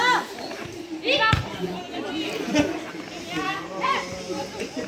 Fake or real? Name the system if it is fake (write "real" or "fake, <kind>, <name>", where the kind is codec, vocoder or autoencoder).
real